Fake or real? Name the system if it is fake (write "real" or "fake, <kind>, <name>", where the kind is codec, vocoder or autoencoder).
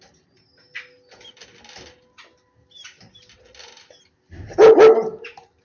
real